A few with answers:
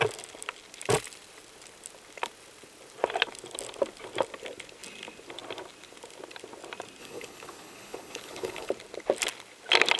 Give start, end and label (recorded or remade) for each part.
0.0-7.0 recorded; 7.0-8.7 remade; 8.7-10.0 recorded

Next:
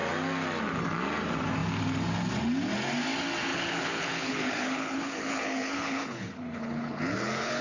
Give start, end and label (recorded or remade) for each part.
0.0-3.5 recorded; 3.5-7.6 remade

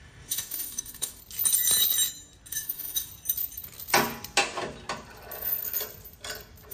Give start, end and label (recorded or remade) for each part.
0.0-1.2 remade; 1.2-2.5 recorded; 2.5-3.1 remade; 3.1-6.7 recorded

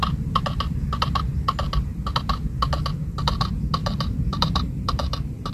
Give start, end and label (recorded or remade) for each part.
0.0-3.8 recorded; 3.8-5.5 remade